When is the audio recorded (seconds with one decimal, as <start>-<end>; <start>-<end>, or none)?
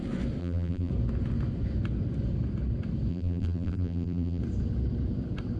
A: 0.0-0.4; 0.9-3.1; 4.4-5.6